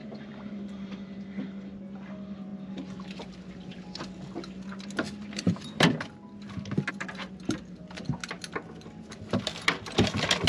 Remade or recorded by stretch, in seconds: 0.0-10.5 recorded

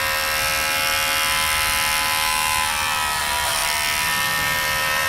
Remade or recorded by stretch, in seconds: 0.0-3.6 recorded; 3.6-5.1 remade

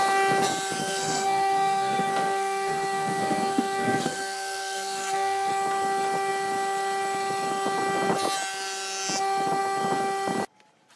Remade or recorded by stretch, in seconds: 0.0-0.8 recorded; 0.8-5.5 remade; 5.5-11.0 recorded

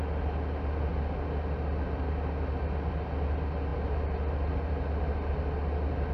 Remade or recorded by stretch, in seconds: 0.0-6.1 recorded

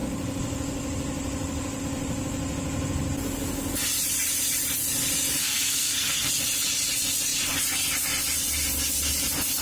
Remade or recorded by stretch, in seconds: 0.0-5.4 recorded; 5.4-6.3 remade; 6.3-9.6 recorded

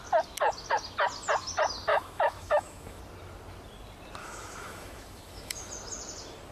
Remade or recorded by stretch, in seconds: 0.0-1.9 recorded; 1.9-3.0 remade; 3.0-4.2 recorded; 4.2-5.7 remade; 5.7-6.5 recorded

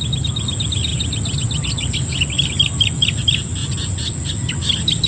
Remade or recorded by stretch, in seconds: 0.0-5.1 recorded

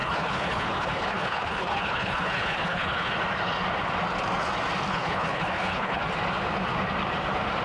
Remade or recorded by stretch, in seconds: 0.0-3.1 remade; 3.1-4.9 recorded; 4.9-6.0 remade; 6.0-7.6 recorded